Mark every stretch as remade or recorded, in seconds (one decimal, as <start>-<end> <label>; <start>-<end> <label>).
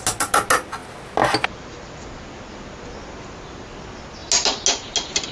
0.0-5.3 recorded